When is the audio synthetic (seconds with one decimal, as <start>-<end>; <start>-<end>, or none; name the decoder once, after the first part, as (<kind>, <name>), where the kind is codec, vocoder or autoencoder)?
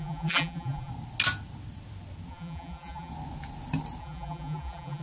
0.0-0.9 (vocoder, BigVGAN v2); 2.3-3.1; 4.0-5.0